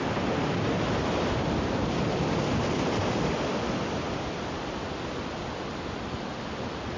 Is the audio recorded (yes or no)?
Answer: yes